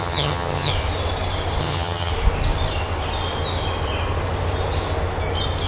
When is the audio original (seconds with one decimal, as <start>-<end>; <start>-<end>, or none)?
0.7-1.6; 2.1-5.7